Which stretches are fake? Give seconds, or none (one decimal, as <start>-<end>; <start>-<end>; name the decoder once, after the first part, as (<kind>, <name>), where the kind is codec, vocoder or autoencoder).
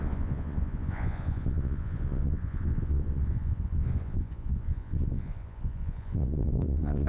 0.0-7.1 (vocoder, Vocos)